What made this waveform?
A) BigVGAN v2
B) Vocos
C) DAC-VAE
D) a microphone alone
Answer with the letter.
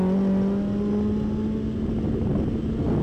D